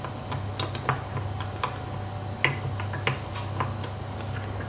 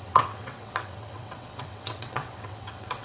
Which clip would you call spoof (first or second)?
second